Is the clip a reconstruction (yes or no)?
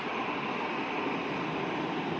no